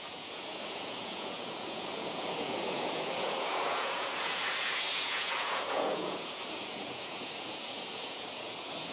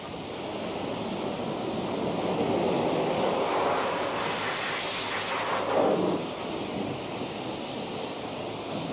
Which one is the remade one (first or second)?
first